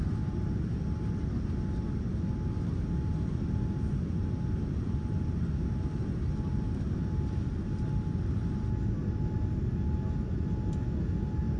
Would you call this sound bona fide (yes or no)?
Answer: yes